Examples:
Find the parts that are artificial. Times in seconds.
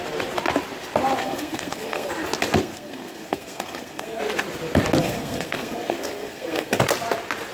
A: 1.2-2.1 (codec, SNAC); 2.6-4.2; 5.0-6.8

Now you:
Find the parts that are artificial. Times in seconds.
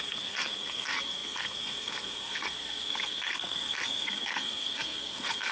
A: 0.0-5.5 (codec, SNAC)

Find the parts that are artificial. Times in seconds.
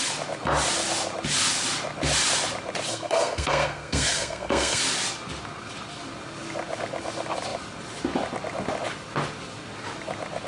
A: 2.9-4.8 (codec, SNAC)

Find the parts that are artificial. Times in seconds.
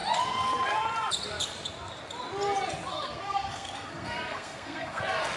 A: 2.9-5.0 (codec, SNAC)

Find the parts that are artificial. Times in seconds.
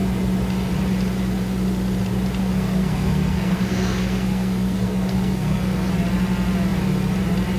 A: 2.4-5.9 (codec, SNAC)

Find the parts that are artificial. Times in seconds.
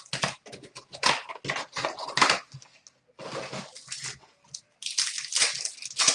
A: none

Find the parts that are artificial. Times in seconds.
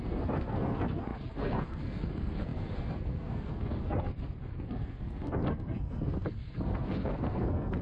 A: 0.0-7.8 (codec, SNAC)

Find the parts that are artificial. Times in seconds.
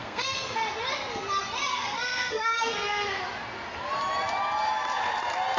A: 0.0-0.6 (codec, SNAC); 1.7-3.2